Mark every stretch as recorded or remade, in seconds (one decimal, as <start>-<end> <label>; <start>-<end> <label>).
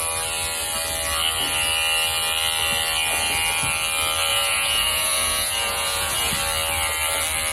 0.0-4.3 recorded; 4.3-6.3 remade; 6.3-7.5 recorded